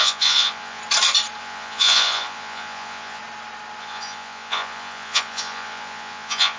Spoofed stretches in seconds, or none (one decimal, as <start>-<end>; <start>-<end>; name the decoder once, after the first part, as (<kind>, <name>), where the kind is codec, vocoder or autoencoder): 0.0-0.8 (vocoder, Vocos); 1.4-3.2; 3.8-6.6